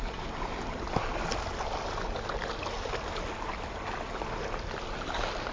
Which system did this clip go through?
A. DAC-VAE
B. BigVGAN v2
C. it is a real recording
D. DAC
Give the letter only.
C